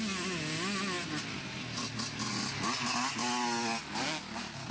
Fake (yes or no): no